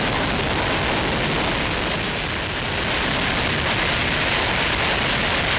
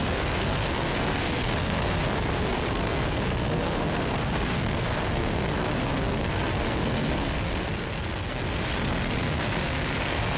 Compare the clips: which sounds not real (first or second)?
second